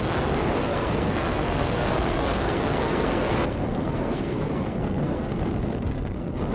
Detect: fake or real fake